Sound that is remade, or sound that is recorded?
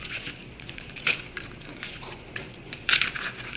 remade